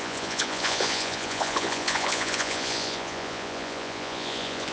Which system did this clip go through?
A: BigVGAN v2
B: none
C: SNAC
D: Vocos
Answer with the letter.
D